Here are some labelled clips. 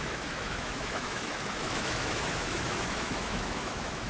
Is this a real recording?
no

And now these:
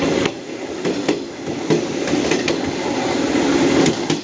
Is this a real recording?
yes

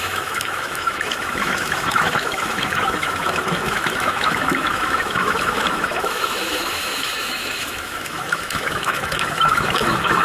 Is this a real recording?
no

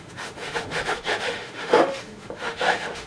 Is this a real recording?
no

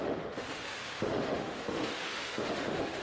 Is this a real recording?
no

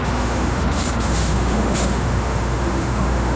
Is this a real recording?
no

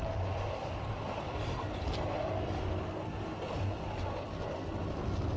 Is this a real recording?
yes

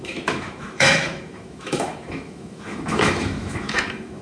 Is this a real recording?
no